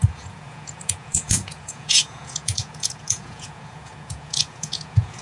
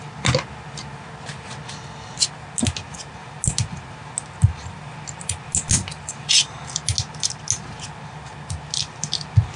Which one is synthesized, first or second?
first